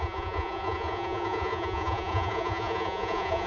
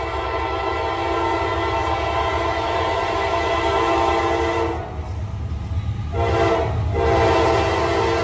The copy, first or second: first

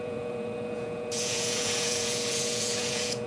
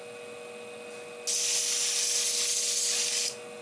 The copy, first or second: first